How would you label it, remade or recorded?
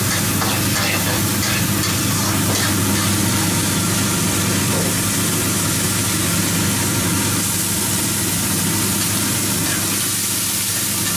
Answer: recorded